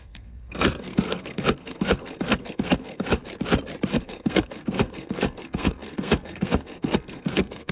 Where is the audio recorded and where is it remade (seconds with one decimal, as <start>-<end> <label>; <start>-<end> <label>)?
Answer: 0.0-3.2 remade; 3.2-3.9 recorded; 3.9-7.7 remade